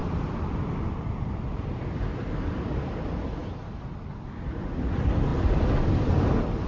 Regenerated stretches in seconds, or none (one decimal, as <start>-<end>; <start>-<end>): none